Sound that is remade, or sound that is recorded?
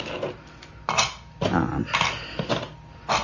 recorded